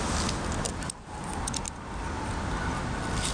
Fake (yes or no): no